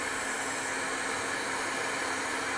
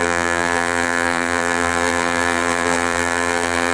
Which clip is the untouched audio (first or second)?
first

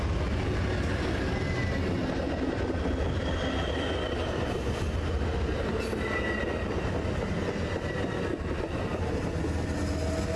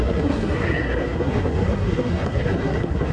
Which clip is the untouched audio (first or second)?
first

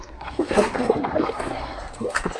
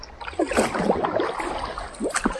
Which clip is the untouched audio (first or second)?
second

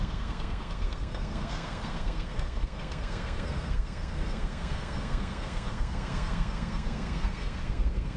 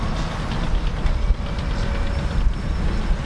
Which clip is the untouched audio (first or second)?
second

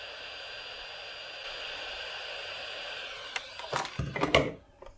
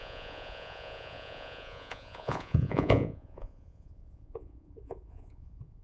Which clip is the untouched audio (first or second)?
first